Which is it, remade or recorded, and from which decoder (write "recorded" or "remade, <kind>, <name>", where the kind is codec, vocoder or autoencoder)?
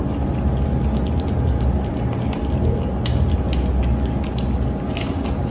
recorded